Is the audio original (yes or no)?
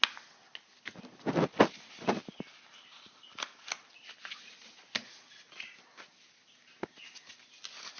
yes